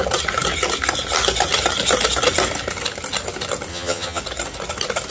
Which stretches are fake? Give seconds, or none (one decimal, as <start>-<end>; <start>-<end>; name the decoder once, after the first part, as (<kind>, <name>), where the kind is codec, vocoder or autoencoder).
3.7-4.2 (vocoder, HiFi-GAN)